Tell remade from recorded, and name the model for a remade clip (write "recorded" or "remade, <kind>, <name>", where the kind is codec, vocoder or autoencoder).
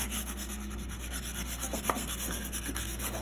remade, codec, SNAC